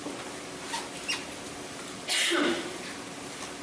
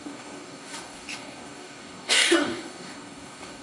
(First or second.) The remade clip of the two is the second